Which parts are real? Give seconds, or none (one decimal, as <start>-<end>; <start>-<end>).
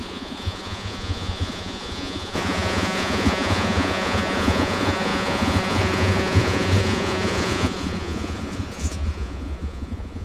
none